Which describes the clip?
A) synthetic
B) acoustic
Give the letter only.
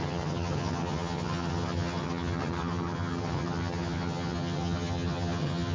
A